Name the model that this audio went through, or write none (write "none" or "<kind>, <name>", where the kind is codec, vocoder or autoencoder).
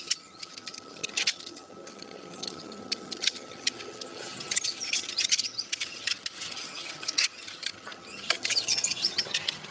vocoder, HiFi-GAN